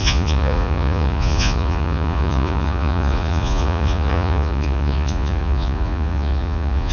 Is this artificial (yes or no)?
yes